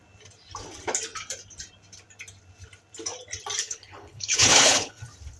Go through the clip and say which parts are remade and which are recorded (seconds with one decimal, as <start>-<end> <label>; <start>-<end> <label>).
0.0-3.6 recorded; 3.6-5.0 remade; 5.0-5.4 recorded